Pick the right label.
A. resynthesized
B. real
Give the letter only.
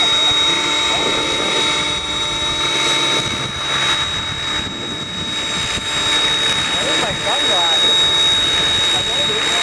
B